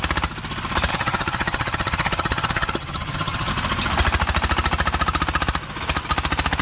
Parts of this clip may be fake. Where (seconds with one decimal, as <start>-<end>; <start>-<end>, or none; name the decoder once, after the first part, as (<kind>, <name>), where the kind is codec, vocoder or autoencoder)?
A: 0.9-3.5 (vocoder, HiFi-GAN)